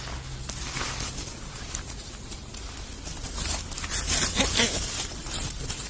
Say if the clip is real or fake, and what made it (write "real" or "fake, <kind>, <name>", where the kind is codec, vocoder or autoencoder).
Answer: real